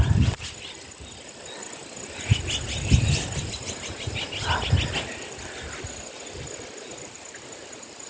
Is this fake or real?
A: real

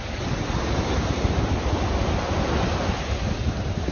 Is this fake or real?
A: real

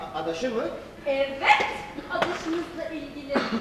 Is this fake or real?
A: real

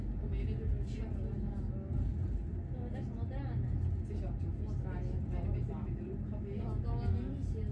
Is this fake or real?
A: real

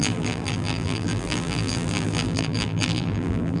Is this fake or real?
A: fake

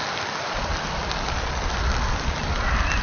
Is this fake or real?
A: real